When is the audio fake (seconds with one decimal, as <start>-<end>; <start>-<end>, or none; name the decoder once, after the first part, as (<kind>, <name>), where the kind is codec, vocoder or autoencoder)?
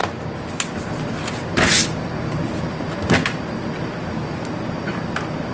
none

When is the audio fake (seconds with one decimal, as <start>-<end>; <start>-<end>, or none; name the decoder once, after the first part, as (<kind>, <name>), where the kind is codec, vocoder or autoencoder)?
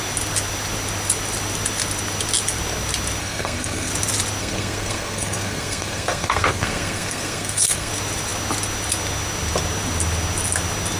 3.2-3.9 (codec, SNAC); 4.4-7.9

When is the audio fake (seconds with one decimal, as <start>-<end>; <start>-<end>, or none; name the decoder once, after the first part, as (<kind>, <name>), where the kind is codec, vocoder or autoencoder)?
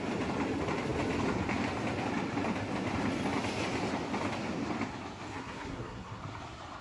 5.3-6.2 (codec, SNAC)